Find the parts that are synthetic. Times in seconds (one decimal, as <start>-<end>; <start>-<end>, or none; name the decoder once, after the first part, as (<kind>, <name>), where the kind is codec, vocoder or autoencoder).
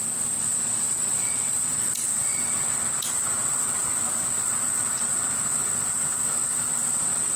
none